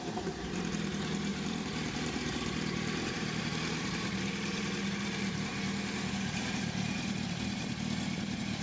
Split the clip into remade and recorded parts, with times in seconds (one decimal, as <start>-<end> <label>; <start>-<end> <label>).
0.0-5.5 remade; 5.5-6.1 recorded; 6.1-8.6 remade